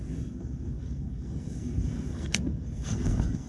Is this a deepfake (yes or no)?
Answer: yes